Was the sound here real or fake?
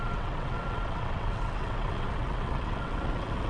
fake